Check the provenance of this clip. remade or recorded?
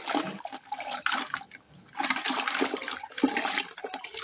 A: recorded